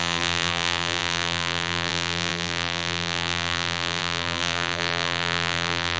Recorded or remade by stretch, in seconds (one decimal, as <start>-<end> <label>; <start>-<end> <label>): 0.0-6.0 remade